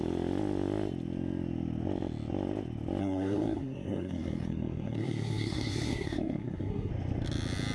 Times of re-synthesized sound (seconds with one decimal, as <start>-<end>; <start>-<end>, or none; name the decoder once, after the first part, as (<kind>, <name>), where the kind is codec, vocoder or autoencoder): 3.0-6.9 (codec, SNAC)